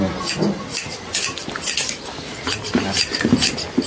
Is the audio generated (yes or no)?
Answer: no